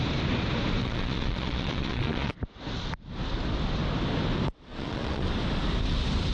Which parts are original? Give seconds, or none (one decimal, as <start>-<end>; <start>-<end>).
0.0-0.8; 2.3-4.7; 5.3-6.3